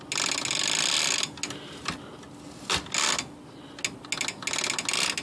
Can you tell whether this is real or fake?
real